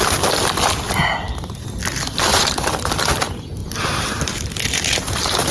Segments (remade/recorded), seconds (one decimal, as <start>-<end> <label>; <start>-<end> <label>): 0.0-2.3 recorded; 2.3-3.1 remade; 3.1-3.6 recorded; 3.6-5.5 remade